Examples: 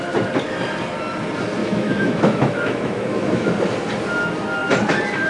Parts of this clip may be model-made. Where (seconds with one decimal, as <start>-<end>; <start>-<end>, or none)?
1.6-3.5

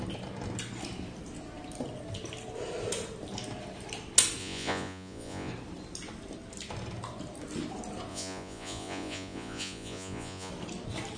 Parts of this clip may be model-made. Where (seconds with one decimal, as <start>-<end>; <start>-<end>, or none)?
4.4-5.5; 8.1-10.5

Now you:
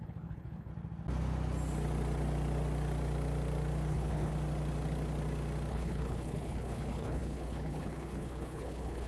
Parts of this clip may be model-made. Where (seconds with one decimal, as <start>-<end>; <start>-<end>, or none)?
0.0-0.7; 3.9-4.3; 5.7-9.1